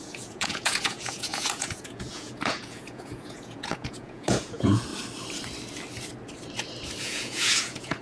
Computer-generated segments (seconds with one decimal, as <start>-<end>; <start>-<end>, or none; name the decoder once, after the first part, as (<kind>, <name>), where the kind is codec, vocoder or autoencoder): 0.0-4.9 (vocoder, Vocos); 7.0-8.0